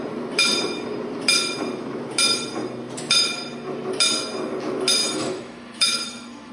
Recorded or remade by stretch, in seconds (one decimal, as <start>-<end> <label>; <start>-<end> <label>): 0.0-5.0 recorded; 5.0-6.5 remade